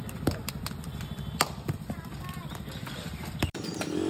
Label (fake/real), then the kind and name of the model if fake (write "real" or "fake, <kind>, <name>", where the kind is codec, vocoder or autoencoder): fake, vocoder, BigVGAN v2